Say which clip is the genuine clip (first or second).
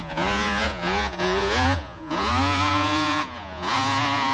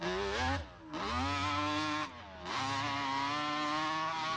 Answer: second